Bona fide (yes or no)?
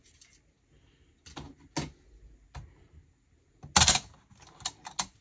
yes